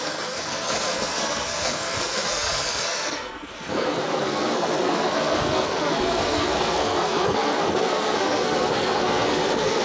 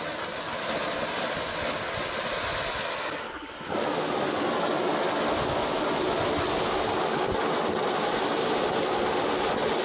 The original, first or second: second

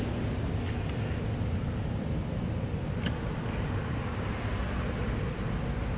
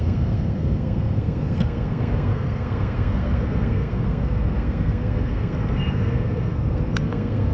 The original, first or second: first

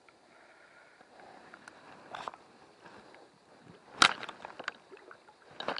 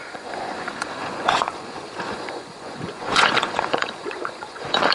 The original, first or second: first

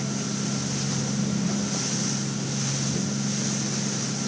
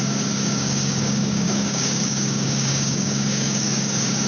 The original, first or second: first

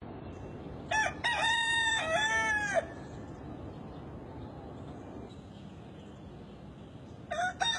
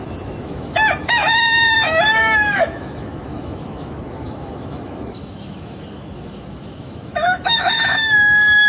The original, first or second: first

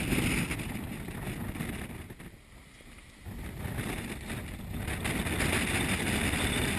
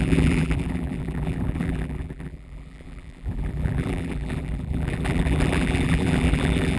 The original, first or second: first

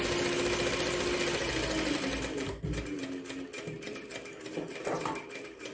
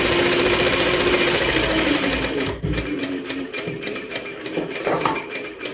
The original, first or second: first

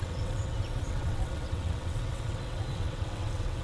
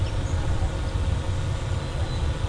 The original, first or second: second